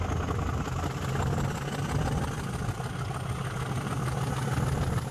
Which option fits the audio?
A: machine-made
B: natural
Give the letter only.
B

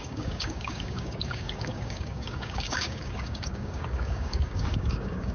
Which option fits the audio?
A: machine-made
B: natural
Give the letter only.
A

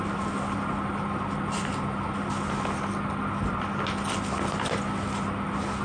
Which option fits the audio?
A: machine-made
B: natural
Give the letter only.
B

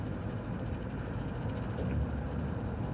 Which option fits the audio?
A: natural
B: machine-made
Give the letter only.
A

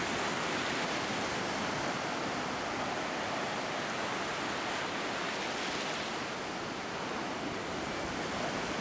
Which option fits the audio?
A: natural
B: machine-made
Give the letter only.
A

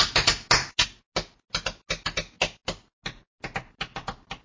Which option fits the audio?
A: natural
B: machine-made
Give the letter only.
A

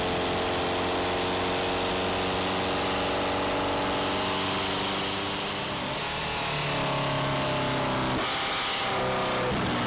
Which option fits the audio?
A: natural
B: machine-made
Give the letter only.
A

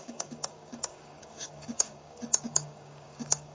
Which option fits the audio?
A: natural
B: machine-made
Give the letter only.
B